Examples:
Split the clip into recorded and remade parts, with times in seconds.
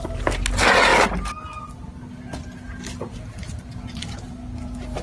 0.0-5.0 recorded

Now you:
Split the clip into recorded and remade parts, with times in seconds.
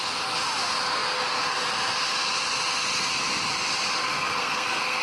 0.0-4.0 recorded; 4.0-5.0 remade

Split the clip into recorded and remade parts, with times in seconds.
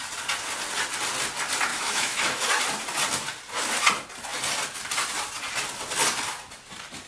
0.0-1.7 recorded; 1.7-2.5 remade; 2.5-7.1 recorded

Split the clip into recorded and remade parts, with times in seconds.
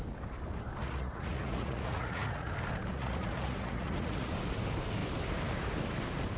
0.0-0.8 recorded; 0.8-2.5 remade; 2.5-2.9 recorded; 2.9-4.3 remade; 4.3-6.4 recorded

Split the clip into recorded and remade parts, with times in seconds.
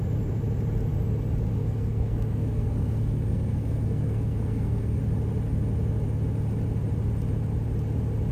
0.0-1.6 recorded; 1.6-5.0 remade; 5.0-8.3 recorded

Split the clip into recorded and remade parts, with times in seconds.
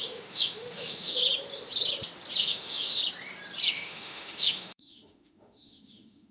0.0-1.2 remade; 1.2-2.4 recorded; 2.4-3.0 remade; 3.0-3.7 recorded; 3.7-6.3 remade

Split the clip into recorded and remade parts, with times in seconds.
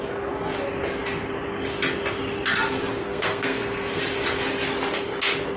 0.0-3.0 recorded; 3.0-4.0 remade; 4.0-5.6 recorded